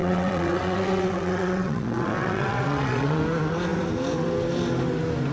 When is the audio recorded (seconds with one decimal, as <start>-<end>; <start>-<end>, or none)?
3.2-5.3